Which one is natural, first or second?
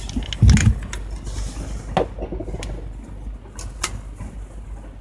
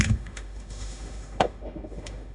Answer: first